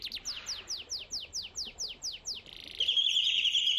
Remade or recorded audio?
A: recorded